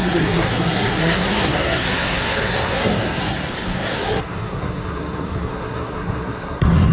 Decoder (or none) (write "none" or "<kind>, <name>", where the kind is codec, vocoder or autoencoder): codec, SNAC